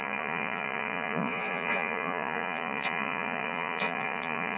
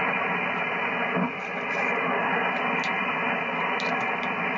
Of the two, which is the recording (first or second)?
second